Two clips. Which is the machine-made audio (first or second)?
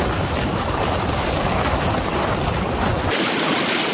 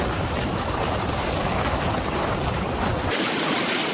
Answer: first